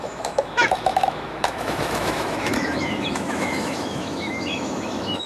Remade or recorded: remade